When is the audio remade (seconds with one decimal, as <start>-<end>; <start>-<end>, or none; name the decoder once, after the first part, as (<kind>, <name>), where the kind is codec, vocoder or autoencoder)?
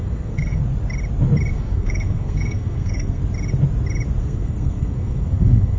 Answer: 0.0-0.6 (codec, SNAC); 1.5-3.2; 4.2-5.8